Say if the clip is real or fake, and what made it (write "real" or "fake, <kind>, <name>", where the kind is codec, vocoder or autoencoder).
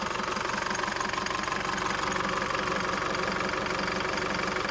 real